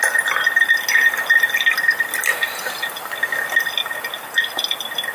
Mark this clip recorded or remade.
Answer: recorded